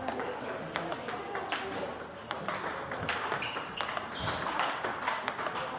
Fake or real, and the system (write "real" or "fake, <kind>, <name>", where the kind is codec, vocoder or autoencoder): real